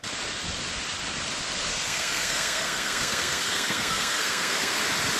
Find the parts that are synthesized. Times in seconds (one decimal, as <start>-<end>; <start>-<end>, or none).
1.7-4.8